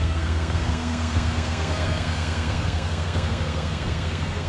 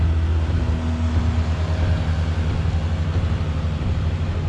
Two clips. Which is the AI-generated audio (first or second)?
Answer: first